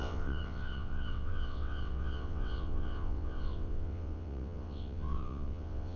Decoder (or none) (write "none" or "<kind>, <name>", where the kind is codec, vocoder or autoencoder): vocoder, WaveNeXt